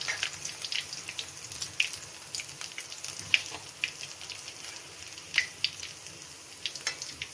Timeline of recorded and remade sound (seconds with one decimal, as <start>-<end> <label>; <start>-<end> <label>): 0.0-7.3 recorded